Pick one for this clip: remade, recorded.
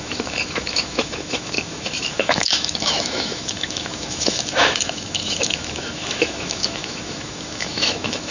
remade